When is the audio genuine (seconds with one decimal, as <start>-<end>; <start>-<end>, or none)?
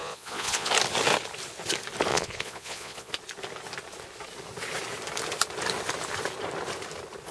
0.7-2.1; 3.1-7.3